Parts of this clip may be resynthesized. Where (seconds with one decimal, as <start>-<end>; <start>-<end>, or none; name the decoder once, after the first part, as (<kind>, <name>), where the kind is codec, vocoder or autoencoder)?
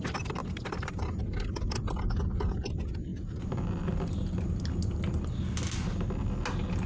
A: 0.4-1.2 (vocoder, BigVGAN v2)